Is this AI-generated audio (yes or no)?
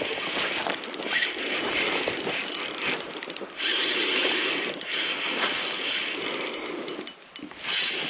no